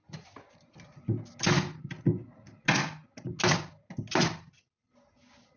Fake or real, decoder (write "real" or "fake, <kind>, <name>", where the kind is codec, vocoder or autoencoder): real